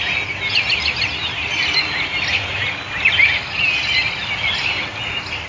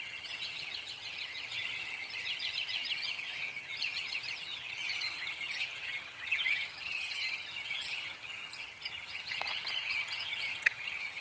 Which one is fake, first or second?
second